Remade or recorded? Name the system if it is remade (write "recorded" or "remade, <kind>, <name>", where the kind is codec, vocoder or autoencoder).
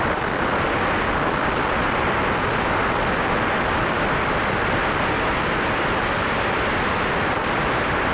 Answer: recorded